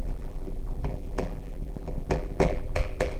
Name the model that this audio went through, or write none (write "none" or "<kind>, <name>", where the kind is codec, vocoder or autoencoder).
vocoder, BigVGAN v2